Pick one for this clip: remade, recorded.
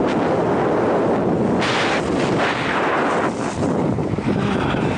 recorded